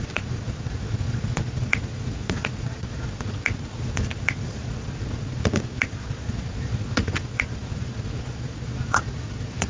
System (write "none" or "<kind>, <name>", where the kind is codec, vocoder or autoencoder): vocoder, Vocos